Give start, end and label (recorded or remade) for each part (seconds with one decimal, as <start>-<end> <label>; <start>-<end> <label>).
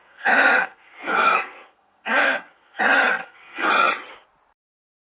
0.0-2.8 remade; 2.8-3.2 recorded; 3.2-3.7 remade; 3.7-5.0 recorded